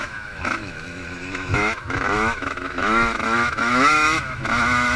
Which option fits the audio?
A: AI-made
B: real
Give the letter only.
A